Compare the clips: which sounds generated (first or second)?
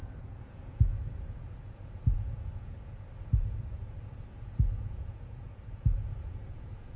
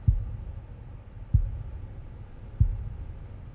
first